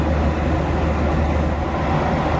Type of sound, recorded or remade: recorded